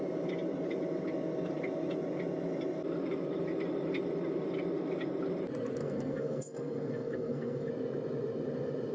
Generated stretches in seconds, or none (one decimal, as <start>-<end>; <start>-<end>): 5.8-7.7